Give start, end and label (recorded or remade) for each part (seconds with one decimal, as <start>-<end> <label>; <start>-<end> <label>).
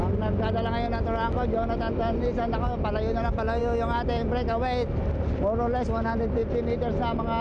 0.0-7.4 recorded